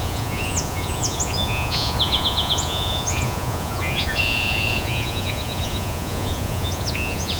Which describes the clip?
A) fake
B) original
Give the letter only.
A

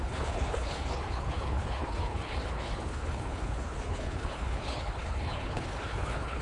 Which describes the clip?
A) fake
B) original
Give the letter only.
A